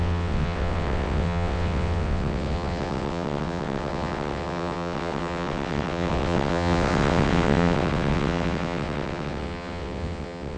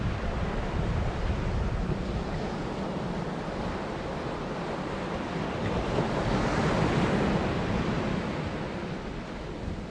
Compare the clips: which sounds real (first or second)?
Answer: second